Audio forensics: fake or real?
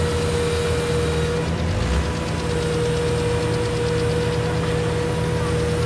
real